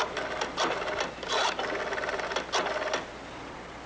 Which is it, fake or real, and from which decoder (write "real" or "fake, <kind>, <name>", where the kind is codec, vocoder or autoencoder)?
real